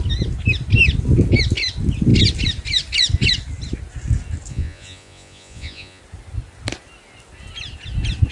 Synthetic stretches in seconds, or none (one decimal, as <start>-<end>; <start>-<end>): 4.5-6.0